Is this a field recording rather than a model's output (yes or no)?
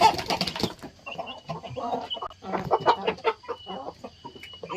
yes